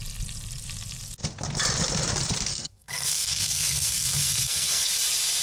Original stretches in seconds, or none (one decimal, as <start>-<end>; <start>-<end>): 0.0-2.5; 4.9-5.4